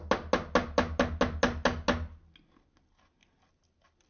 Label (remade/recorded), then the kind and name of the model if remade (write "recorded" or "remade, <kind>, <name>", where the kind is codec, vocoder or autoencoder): recorded